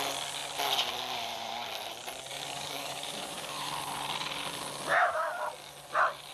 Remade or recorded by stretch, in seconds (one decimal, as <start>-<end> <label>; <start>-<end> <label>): 0.0-2.3 recorded; 2.3-3.7 remade; 3.7-4.9 recorded; 4.9-5.5 remade; 5.5-6.3 recorded